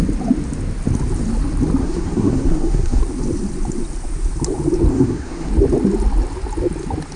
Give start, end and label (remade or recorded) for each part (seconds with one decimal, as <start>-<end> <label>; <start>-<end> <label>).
0.0-1.8 recorded; 1.8-3.0 remade; 3.0-4.9 recorded; 4.9-5.5 remade; 5.5-7.2 recorded